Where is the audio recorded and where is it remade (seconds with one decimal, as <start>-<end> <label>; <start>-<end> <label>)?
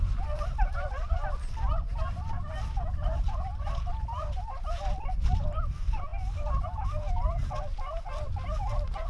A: 0.0-9.1 recorded